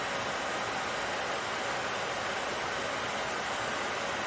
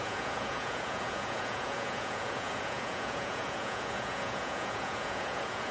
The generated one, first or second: second